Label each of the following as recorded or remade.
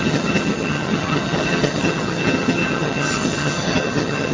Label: remade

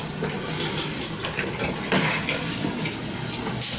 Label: recorded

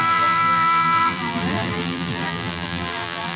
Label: remade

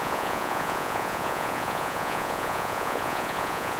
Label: remade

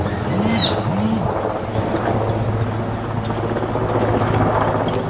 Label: recorded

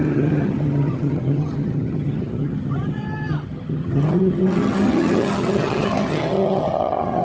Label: remade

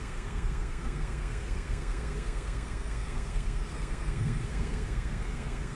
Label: remade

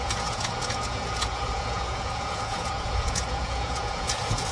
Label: remade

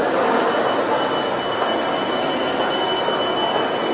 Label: recorded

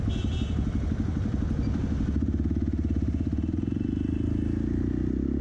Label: recorded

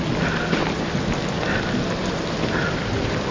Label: recorded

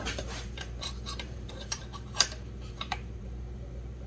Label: remade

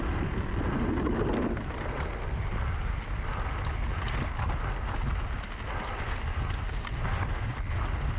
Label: recorded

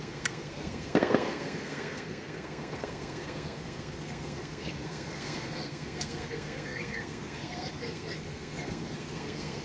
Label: remade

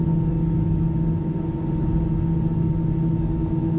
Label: recorded